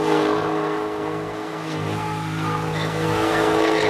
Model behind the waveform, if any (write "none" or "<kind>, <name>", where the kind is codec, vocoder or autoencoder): codec, SNAC